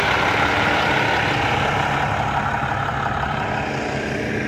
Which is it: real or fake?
real